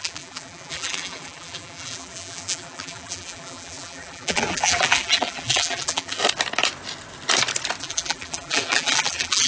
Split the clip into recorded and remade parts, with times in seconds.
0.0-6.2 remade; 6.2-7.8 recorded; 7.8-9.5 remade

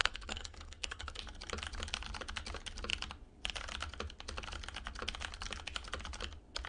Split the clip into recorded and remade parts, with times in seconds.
0.0-1.2 remade; 1.2-6.7 recorded

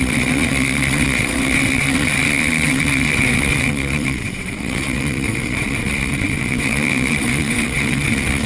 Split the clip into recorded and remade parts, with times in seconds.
0.0-8.5 remade

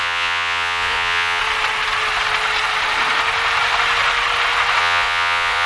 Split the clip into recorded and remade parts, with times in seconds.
0.0-1.4 remade; 1.4-4.8 recorded; 4.8-5.7 remade

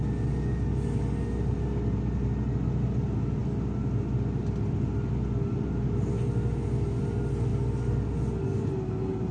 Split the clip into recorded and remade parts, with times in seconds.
0.0-9.3 recorded

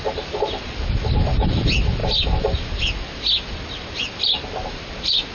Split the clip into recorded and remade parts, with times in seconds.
0.0-5.3 recorded

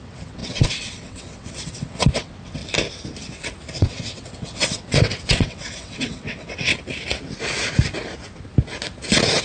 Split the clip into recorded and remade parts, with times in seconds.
0.0-2.6 remade; 2.6-3.8 recorded; 3.8-6.7 remade; 6.7-9.4 recorded